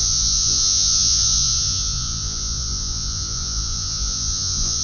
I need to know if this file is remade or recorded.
remade